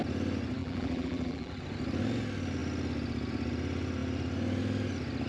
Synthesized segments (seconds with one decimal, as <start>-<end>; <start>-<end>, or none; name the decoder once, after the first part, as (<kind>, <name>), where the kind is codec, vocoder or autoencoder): 0.6-1.6 (vocoder, BigVGAN v2)